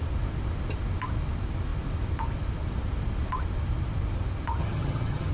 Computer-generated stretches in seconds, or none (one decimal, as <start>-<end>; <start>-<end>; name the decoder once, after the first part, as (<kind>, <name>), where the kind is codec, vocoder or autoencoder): 4.6-5.3 (vocoder, HiFi-GAN)